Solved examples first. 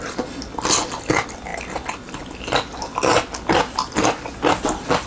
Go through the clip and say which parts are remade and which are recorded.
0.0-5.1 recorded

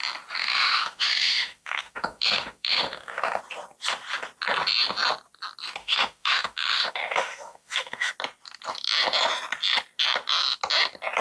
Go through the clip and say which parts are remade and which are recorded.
0.0-0.4 recorded; 0.4-3.4 remade; 3.4-5.8 recorded; 5.8-8.1 remade; 8.1-11.2 recorded

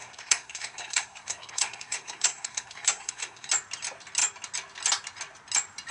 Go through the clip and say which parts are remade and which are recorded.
0.0-3.5 remade; 3.5-5.9 recorded

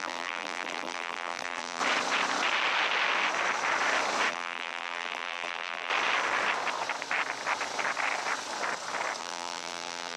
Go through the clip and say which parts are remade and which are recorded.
0.0-1.8 remade; 1.8-4.3 recorded; 4.3-5.9 remade; 5.9-9.2 recorded; 9.2-10.2 remade